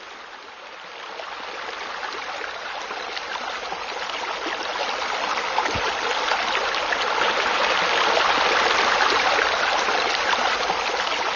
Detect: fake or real real